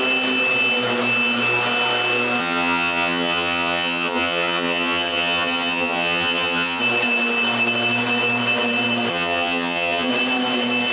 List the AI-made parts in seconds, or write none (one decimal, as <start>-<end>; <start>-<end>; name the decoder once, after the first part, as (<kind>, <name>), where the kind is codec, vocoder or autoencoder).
2.4-6.8 (vocoder, HiFi-GAN); 9.1-10.1